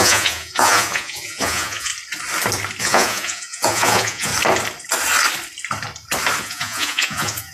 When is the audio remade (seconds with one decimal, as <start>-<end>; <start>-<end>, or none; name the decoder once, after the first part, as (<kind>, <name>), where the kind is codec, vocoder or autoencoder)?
0.0-1.9 (vocoder, Vocos); 2.8-4.3; 6.4-7.5